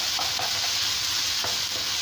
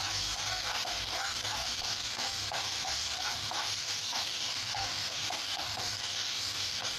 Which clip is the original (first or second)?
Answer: first